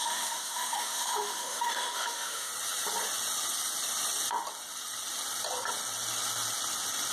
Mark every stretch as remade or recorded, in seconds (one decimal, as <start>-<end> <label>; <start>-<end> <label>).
0.0-2.5 remade; 2.5-7.1 recorded